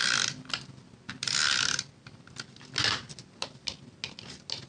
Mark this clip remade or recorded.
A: recorded